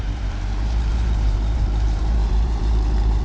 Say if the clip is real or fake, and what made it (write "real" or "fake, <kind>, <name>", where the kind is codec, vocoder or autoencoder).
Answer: fake, vocoder, BigVGAN v2